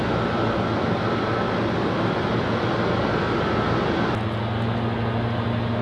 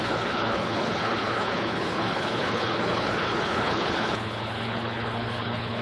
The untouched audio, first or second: first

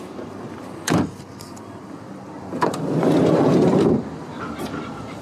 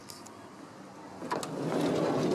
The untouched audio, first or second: second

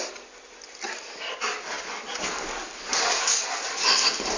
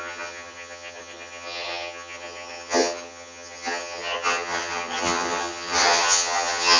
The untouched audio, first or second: first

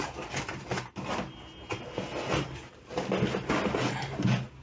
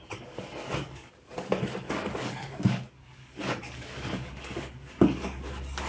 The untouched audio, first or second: first